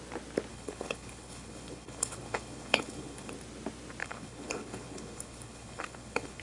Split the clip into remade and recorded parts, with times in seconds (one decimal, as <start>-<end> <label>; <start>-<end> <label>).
0.0-0.5 recorded; 0.5-3.3 remade; 3.3-4.0 recorded; 4.0-6.4 remade